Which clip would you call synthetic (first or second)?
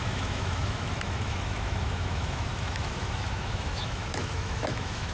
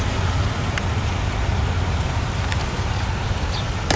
first